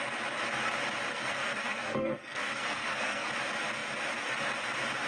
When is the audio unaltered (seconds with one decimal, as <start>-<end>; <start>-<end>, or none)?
0.0-1.1; 3.3-5.1